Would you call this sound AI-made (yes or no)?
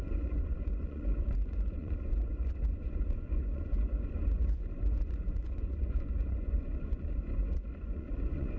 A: yes